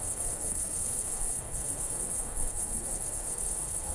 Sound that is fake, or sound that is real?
fake